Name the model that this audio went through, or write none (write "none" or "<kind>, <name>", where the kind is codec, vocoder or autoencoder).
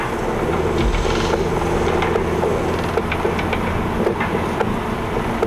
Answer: none